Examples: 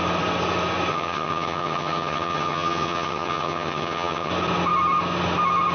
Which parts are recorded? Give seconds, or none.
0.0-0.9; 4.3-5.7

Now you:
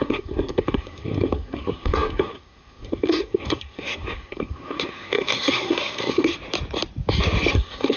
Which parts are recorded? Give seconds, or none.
6.3-7.5

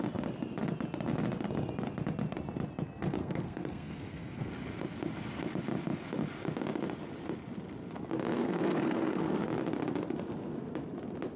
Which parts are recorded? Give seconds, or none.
0.0-3.2; 4.5-8.4; 9.4-11.4

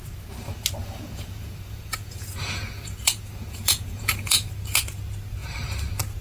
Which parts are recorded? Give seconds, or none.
0.0-0.8; 4.5-6.2

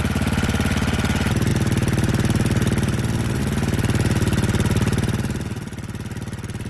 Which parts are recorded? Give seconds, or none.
0.0-6.7

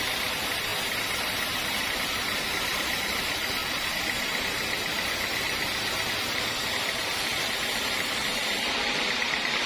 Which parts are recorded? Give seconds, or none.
0.7-2.6; 3.6-7.4